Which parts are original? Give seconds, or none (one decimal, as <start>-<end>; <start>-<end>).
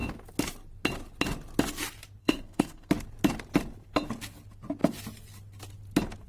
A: 0.0-2.2; 2.9-6.3